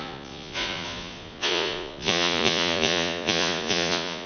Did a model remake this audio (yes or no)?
yes